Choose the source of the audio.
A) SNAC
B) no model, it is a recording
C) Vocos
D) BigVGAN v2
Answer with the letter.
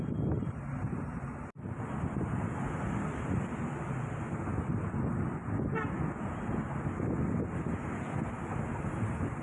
B